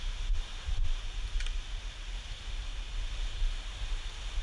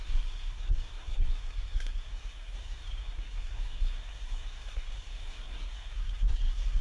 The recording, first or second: first